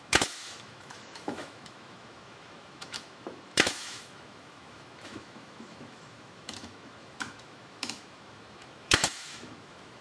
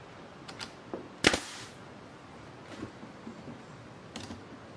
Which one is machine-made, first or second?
first